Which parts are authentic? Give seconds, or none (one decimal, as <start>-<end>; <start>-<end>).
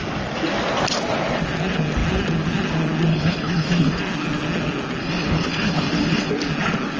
0.0-3.1; 4.0-5.0; 6.3-7.0